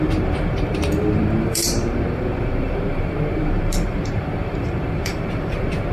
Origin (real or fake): fake